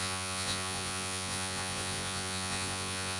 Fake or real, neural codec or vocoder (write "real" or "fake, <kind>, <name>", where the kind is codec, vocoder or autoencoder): fake, vocoder, Vocos